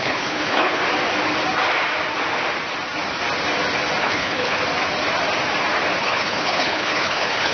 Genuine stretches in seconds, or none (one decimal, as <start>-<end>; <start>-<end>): 0.8-4.0; 4.6-6.0